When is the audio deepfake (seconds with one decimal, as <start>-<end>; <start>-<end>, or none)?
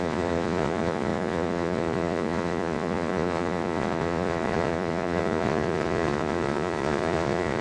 0.0-7.6